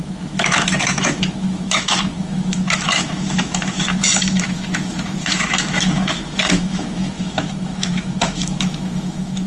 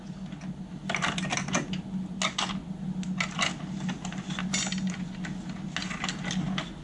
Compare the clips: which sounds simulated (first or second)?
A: first